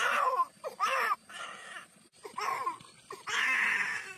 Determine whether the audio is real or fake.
real